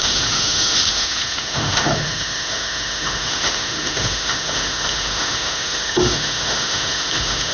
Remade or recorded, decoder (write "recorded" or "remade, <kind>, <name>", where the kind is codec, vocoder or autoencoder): remade, autoencoder, DAC-VAE